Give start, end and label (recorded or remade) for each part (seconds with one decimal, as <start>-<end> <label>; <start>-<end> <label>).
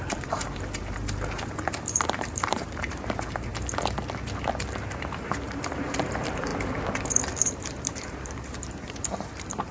0.0-3.5 remade; 3.5-5.0 recorded; 5.0-6.5 remade; 6.5-7.4 recorded; 7.4-9.7 remade